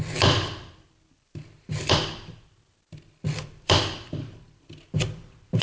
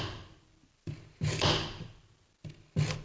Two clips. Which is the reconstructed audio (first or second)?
first